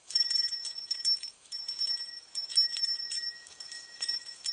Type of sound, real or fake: fake